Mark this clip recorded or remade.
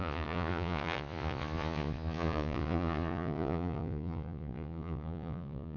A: remade